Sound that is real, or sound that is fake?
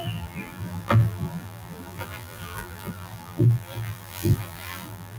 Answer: fake